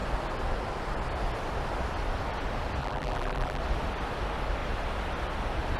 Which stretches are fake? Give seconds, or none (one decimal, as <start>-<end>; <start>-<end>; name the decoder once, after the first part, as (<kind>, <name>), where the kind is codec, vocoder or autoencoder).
2.8-3.6 (vocoder, BigVGAN v2)